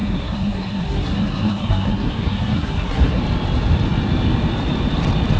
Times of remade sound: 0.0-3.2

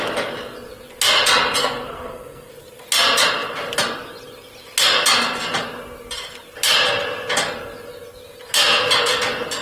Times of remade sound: 1.6-2.5